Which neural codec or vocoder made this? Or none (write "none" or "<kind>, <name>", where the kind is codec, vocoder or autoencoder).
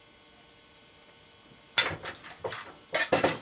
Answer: none